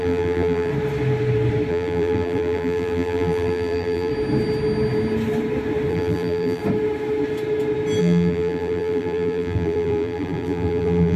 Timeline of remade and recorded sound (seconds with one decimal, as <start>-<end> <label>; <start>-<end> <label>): 0.0-0.7 remade; 0.7-1.7 recorded; 1.7-4.1 remade; 4.1-5.9 recorded; 5.9-6.6 remade; 6.6-8.0 recorded; 8.0-11.2 remade